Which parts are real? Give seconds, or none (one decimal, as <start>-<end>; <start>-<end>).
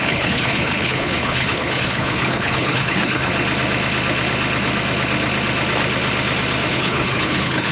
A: 3.3-6.7